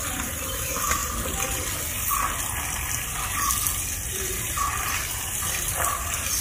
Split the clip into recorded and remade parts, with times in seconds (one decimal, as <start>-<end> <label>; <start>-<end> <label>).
0.0-1.0 remade; 1.0-4.1 recorded; 4.1-6.4 remade